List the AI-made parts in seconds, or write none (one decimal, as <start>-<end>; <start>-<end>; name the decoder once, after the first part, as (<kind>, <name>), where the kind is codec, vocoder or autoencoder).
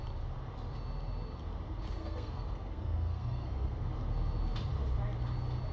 2.0-3.9 (codec, SNAC)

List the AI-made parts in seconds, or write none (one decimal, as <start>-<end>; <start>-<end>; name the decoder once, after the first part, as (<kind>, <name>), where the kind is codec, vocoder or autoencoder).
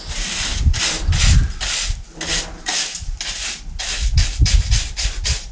none